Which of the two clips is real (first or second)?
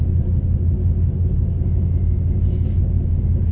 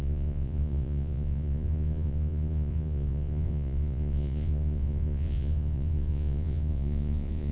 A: first